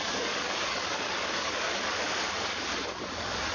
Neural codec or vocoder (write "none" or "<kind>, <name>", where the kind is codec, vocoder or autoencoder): codec, DAC